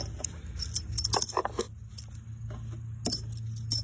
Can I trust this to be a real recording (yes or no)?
yes